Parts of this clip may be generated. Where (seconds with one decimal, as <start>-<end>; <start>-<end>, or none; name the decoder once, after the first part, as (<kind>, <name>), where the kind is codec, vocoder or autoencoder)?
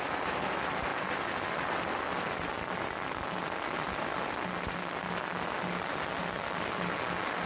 none